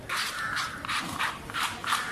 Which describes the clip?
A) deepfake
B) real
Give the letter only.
A